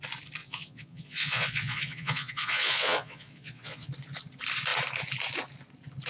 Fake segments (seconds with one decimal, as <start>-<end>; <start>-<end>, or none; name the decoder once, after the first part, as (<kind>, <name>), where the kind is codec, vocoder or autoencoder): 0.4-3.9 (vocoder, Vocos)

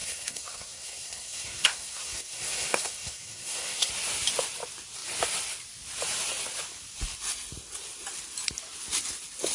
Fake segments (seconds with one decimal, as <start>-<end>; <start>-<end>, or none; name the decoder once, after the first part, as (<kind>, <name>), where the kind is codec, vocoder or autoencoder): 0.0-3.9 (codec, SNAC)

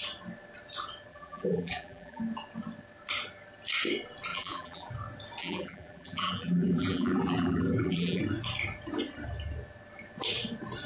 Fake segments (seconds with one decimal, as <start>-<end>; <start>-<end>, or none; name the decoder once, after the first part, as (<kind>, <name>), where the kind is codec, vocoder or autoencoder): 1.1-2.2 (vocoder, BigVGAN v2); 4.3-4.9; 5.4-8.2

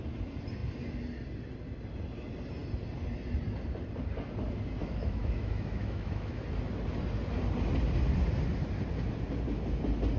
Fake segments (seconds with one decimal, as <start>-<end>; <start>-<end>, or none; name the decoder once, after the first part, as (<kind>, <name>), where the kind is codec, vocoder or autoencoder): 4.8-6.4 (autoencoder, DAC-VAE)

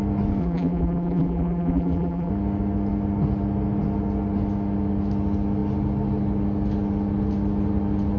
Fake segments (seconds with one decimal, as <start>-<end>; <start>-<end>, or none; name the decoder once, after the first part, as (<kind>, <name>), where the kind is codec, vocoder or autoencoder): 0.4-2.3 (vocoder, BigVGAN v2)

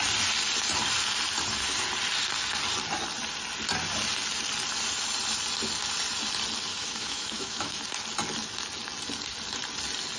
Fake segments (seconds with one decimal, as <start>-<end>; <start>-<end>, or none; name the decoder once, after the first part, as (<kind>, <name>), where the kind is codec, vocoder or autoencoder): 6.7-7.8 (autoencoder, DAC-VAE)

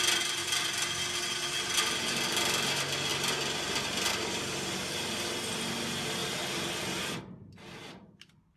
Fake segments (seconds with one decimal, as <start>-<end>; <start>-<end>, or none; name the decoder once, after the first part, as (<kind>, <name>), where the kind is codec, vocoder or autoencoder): none

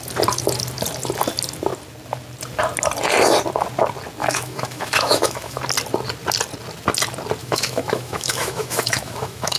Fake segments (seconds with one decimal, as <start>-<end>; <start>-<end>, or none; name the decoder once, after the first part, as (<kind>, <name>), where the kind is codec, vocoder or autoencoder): 4.2-5.6 (autoencoder, DAC-VAE); 7.4-9.6